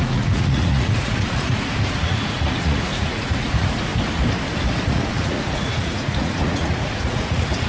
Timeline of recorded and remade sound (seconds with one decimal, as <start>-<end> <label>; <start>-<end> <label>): 0.0-3.9 remade; 3.9-4.9 recorded; 4.9-7.7 remade